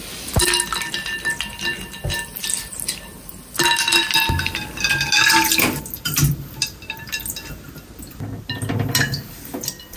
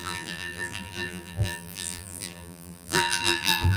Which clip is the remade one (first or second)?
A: second